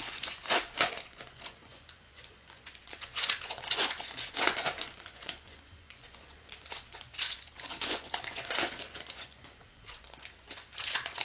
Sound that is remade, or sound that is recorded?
remade